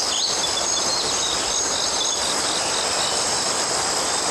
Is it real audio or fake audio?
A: real